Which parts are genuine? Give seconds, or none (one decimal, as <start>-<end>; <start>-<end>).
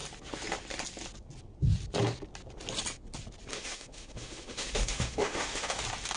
0.0-3.5; 5.8-6.2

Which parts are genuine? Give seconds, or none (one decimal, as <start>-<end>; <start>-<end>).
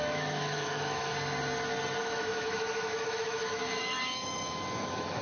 1.1-2.0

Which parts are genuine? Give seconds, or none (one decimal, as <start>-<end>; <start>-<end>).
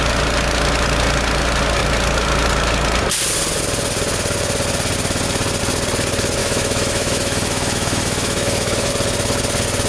0.0-6.4; 8.9-9.9